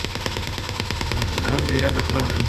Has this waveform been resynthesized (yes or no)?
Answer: yes